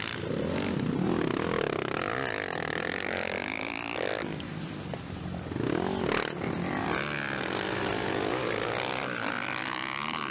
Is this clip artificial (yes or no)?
no